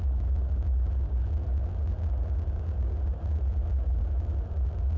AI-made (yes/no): no